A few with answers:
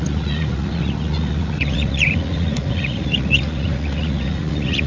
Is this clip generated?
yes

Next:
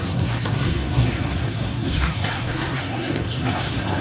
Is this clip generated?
yes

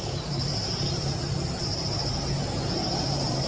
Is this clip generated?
yes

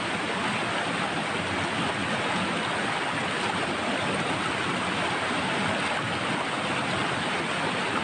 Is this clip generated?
no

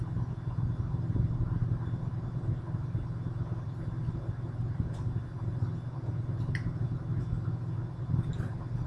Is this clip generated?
no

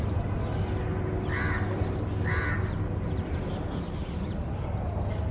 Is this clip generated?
no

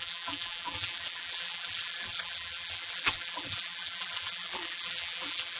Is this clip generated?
yes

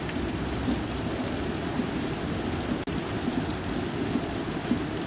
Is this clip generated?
no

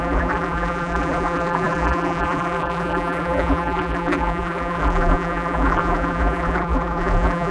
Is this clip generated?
yes